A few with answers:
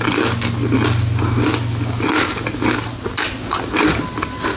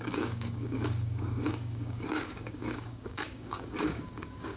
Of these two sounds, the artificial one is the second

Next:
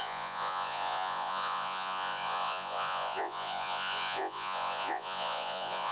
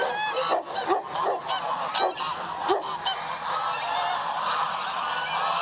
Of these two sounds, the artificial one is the first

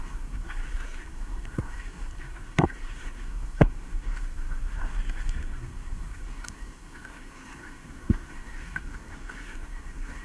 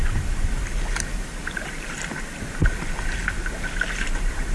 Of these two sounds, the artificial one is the first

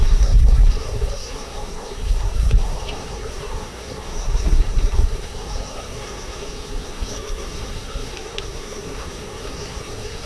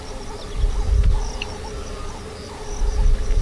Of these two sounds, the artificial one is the first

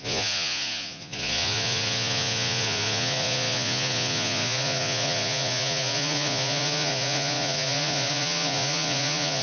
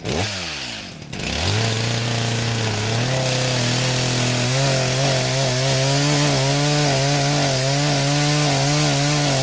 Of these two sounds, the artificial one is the first